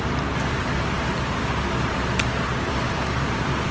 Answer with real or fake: real